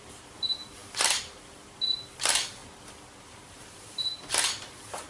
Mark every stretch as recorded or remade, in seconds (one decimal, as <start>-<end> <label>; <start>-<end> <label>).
0.0-2.6 remade; 2.6-3.2 recorded; 3.2-5.1 remade